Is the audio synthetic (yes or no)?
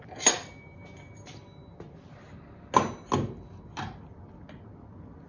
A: no